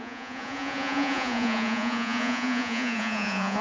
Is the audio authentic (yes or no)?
no